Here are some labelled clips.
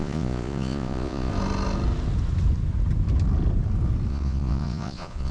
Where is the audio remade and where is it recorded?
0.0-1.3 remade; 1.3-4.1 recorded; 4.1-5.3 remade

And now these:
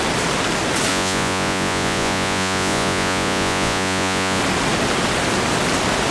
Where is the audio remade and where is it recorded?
0.0-0.9 recorded; 0.9-4.4 remade; 4.4-6.1 recorded